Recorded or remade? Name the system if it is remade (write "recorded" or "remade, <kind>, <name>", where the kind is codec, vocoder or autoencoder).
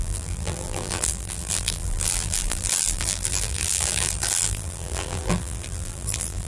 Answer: remade, vocoder, BigVGAN v2